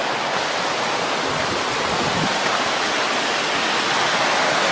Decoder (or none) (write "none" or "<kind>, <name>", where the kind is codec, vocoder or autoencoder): none